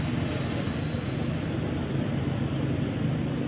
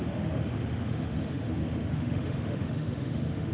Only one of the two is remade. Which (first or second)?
second